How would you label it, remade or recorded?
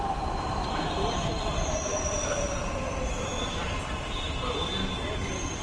remade